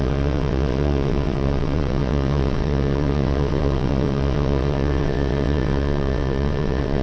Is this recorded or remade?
remade